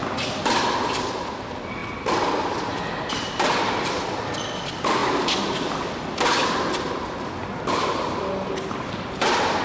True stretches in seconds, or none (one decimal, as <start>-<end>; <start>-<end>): 0.0-9.6